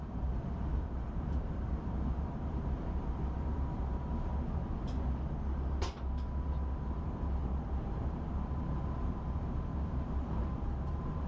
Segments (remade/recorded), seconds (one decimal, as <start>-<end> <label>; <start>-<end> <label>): 0.0-4.3 remade; 4.3-6.8 recorded; 6.8-11.3 remade